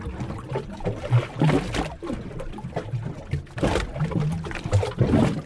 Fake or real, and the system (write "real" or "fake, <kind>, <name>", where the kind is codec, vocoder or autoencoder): real